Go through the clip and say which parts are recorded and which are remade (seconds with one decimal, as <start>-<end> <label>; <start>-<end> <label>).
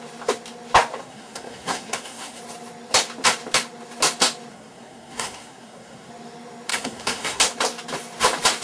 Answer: 0.0-1.0 recorded; 1.0-2.4 remade; 2.4-4.5 recorded; 4.5-6.1 remade; 6.1-6.7 recorded; 6.7-7.4 remade; 7.4-8.6 recorded